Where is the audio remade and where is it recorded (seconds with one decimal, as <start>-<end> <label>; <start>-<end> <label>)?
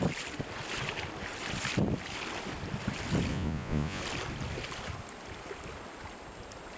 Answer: 0.0-3.3 recorded; 3.3-4.0 remade; 4.0-6.8 recorded